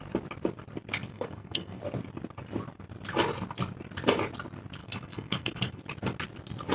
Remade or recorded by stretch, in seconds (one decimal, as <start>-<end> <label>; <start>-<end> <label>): 0.0-1.1 recorded; 1.1-1.8 remade; 1.8-4.8 recorded; 4.8-5.8 remade; 5.8-6.7 recorded